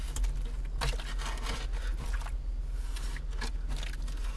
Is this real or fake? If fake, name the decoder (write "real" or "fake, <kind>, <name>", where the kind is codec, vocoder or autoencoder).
real